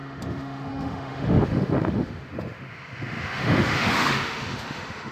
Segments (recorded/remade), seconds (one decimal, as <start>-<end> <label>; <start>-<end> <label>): 0.0-5.1 remade